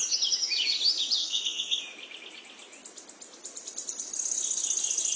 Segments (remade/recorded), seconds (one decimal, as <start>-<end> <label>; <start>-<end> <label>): 0.0-1.2 recorded; 1.2-1.8 remade; 1.8-5.2 recorded